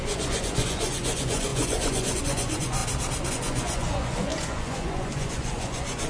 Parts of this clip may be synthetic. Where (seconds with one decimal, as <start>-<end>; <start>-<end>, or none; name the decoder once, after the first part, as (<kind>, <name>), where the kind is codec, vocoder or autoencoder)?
0.0-2.8 (vocoder, Vocos); 3.3-6.1